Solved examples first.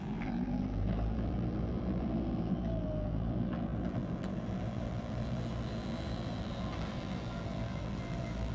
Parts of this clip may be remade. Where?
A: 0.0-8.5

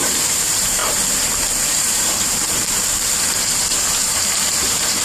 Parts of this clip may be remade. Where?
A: 0.0-5.0